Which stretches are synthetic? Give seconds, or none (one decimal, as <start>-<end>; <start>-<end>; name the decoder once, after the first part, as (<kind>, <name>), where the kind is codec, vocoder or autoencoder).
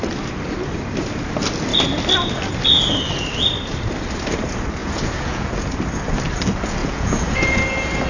4.8-5.7 (vocoder, Vocos); 6.8-7.6